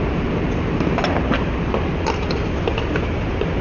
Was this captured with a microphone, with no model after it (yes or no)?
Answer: yes